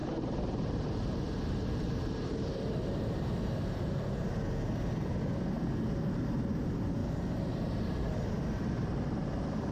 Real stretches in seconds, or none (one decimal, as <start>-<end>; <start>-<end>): 4.3-7.0; 8.1-9.7